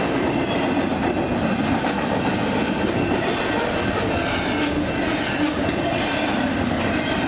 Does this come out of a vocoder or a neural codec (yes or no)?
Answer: no